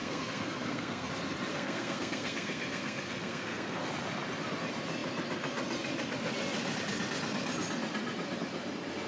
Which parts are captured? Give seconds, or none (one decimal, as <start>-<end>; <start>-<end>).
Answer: 1.1-1.5; 3.9-9.1